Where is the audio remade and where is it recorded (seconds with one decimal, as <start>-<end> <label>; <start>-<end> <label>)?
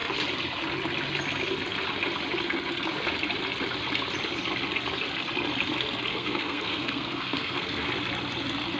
0.0-6.1 recorded; 6.1-7.9 remade; 7.9-8.8 recorded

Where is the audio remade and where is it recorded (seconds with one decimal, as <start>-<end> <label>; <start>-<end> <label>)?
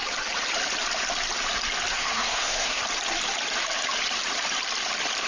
0.0-1.9 recorded; 1.9-2.8 remade; 2.8-5.3 recorded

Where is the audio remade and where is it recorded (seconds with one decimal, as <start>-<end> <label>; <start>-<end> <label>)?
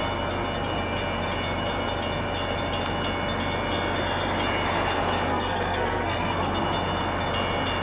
0.0-5.3 recorded; 5.3-6.6 remade; 6.6-7.8 recorded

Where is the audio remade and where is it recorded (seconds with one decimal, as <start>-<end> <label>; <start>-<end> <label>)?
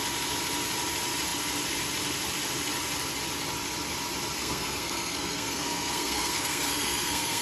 0.0-4.4 recorded; 4.4-7.4 remade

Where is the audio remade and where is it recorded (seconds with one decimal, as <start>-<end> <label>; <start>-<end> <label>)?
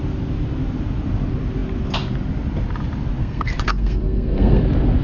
0.0-3.2 recorded; 3.2-4.6 remade; 4.6-5.0 recorded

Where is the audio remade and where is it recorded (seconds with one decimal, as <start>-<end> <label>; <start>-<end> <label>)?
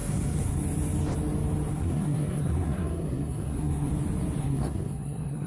0.0-0.6 remade; 0.6-1.7 recorded; 1.7-3.9 remade; 3.9-4.4 recorded; 4.4-5.5 remade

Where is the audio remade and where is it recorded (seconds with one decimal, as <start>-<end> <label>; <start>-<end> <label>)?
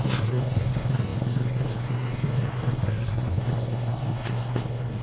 0.0-5.0 remade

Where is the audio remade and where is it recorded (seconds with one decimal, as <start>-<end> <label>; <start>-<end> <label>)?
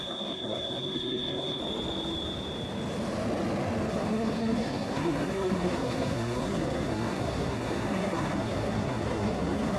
0.0-1.6 remade; 1.6-3.9 recorded; 3.9-9.8 remade